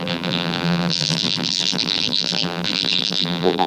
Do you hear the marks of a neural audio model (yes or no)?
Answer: yes